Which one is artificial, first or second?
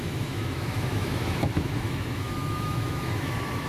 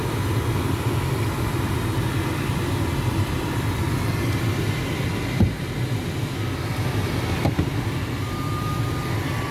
first